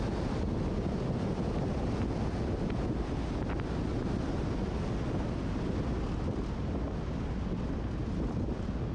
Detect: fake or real real